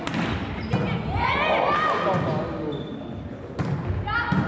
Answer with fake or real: real